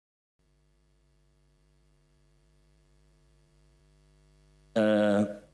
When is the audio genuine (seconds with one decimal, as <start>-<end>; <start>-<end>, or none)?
3.8-5.5